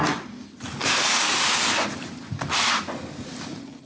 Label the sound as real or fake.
real